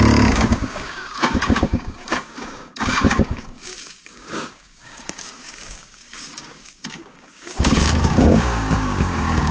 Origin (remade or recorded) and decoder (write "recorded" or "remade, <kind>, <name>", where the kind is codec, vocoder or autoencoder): remade, codec, DAC